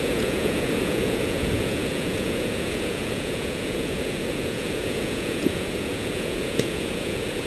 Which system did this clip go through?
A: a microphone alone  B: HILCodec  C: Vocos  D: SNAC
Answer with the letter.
C